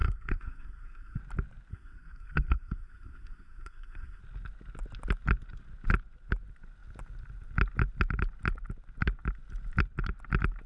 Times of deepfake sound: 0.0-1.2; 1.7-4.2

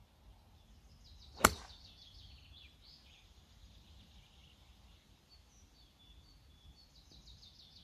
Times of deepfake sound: none

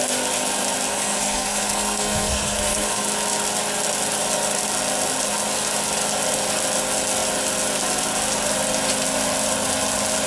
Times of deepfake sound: 0.9-3.0

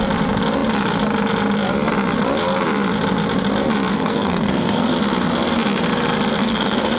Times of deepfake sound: 3.9-4.9; 6.4-7.0

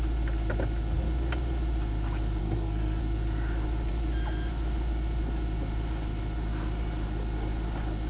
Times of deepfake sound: 2.4-3.0

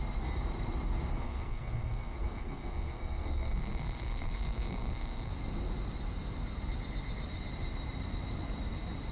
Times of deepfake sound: 1.2-5.3

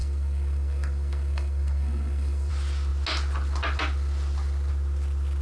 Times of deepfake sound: 0.0-2.5

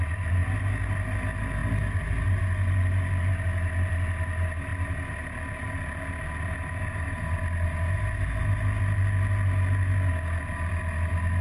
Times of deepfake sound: none